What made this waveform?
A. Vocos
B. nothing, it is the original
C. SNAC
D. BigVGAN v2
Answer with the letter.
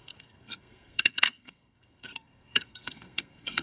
C